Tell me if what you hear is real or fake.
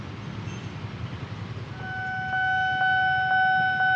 real